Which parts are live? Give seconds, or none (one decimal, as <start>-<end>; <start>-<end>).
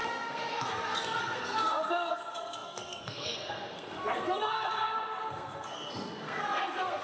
none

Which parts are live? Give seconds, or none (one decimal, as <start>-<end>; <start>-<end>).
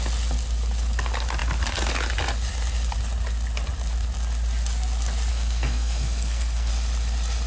0.0-5.3; 6.7-7.5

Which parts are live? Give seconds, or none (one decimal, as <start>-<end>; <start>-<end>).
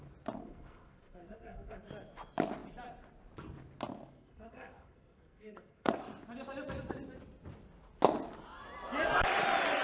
0.0-0.4; 1.9-4.1; 6.0-9.8